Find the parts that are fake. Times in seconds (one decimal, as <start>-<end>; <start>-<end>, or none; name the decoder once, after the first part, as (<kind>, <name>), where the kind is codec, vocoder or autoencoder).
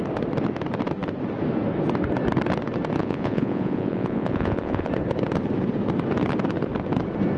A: 3.0-4.9 (vocoder, Vocos)